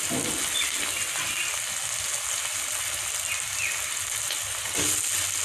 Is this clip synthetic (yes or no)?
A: no